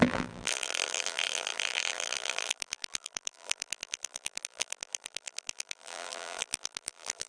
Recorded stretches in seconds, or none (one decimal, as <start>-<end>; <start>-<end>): none